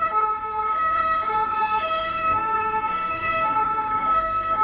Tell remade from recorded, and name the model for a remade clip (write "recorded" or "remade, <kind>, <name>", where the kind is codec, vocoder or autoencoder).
remade, autoencoder, DAC-VAE